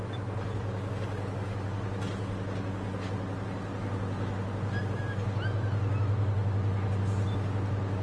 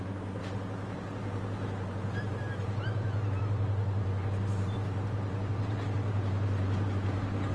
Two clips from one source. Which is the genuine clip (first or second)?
first